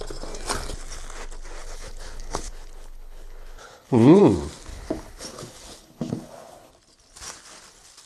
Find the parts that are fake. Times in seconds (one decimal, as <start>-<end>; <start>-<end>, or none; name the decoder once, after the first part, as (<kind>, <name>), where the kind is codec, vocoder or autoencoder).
1.6-4.2 (codec, HILCodec); 4.7-6.7